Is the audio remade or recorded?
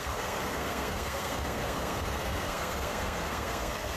remade